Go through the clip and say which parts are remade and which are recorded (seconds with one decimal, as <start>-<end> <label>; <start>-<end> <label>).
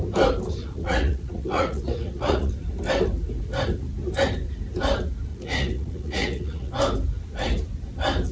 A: 0.0-0.6 recorded; 0.6-2.5 remade; 2.5-5.3 recorded; 5.3-6.7 remade; 6.7-8.3 recorded